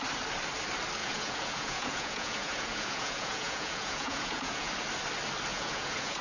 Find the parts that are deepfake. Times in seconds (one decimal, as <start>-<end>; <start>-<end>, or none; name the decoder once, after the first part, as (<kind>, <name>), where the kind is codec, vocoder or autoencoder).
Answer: 1.0-4.7 (vocoder, Vocos); 5.5-6.2